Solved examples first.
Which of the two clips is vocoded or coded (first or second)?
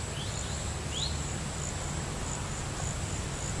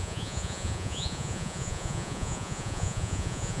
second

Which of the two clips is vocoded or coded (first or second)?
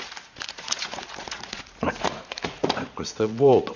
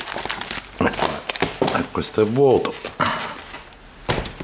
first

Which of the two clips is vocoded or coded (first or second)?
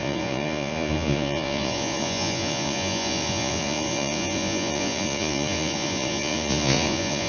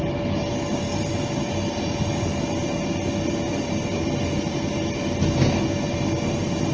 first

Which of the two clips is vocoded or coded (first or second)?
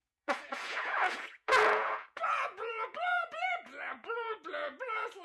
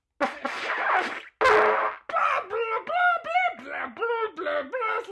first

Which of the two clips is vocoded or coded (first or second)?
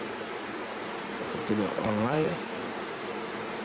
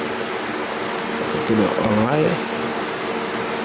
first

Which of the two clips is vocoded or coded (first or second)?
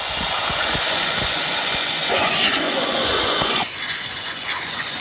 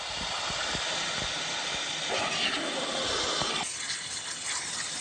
first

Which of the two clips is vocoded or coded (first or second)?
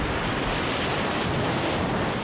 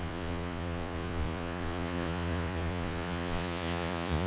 second